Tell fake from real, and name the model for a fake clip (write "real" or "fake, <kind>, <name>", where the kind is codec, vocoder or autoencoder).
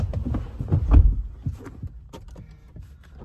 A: real